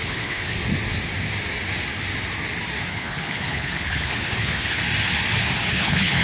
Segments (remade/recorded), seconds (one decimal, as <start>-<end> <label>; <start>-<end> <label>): 0.0-0.6 remade; 0.6-2.9 recorded; 2.9-4.8 remade; 4.8-5.7 recorded; 5.7-6.2 remade